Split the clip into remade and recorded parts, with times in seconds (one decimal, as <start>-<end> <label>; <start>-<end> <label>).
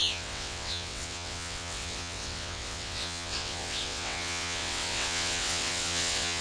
0.0-6.4 remade